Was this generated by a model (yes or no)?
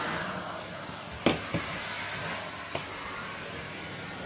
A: no